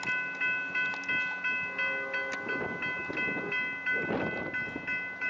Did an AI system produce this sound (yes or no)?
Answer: no